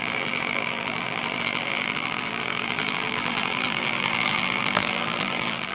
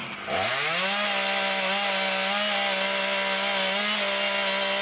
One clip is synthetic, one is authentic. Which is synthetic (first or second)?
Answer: first